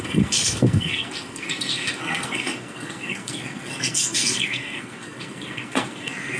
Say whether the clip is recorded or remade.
remade